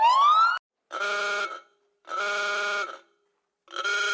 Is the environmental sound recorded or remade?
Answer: recorded